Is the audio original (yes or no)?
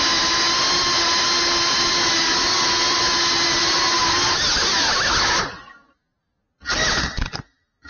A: yes